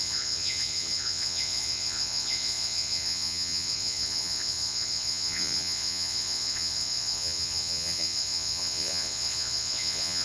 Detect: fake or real fake